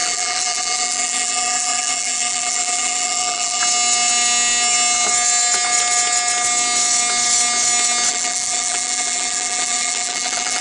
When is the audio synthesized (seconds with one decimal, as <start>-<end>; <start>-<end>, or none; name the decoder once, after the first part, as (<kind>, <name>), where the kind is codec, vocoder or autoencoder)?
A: 0.0-3.6 (vocoder, BigVGAN v2); 8.1-10.6